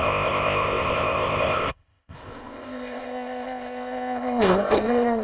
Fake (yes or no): yes